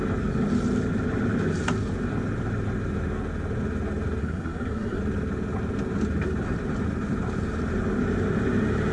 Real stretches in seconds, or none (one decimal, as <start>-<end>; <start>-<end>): 0.0-4.2; 5.0-8.9